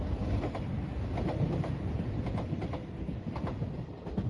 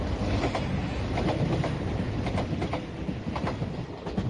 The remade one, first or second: first